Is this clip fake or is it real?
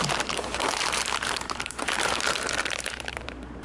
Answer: fake